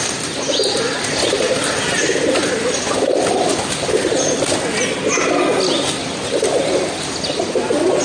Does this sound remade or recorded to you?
recorded